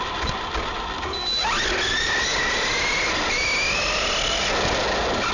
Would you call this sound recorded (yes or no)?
yes